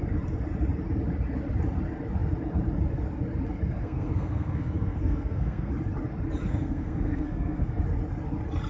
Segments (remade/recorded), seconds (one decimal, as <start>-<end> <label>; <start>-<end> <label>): 0.0-3.8 recorded; 3.8-5.7 remade; 5.7-6.4 recorded; 6.4-7.8 remade; 7.8-8.7 recorded